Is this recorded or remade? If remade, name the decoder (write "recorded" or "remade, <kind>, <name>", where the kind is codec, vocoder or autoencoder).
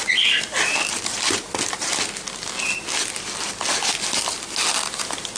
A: recorded